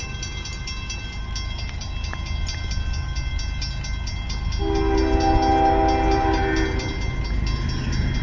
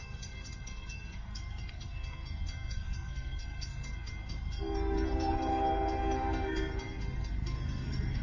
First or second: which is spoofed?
second